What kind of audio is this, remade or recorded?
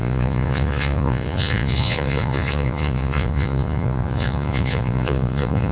remade